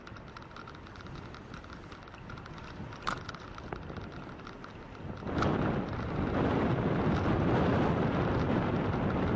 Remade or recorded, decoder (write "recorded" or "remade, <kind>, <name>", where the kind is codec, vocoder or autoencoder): recorded